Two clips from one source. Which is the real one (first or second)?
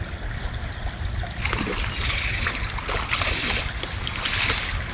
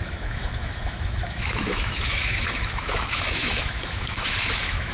first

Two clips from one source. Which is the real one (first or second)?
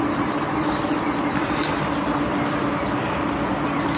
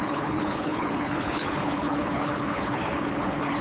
first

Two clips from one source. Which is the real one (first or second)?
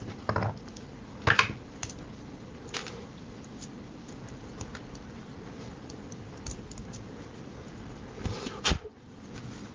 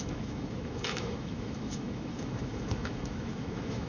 first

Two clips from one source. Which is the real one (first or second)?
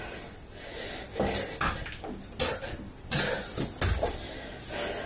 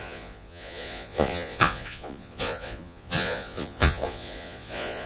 first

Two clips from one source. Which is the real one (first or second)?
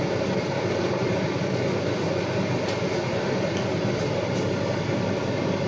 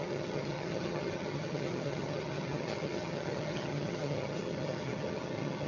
first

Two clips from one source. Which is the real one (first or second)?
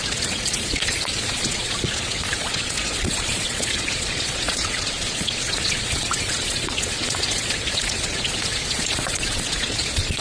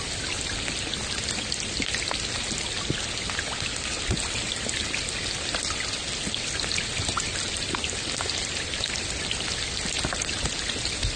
second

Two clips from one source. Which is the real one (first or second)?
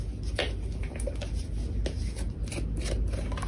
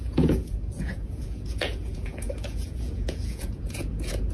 first